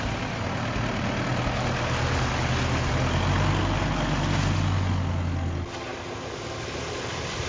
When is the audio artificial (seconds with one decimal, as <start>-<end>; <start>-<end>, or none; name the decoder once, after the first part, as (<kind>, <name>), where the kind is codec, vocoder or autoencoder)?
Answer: none